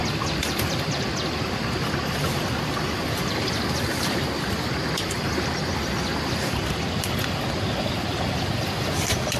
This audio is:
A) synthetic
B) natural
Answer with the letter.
B